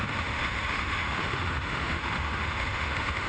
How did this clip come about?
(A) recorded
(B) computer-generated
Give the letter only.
B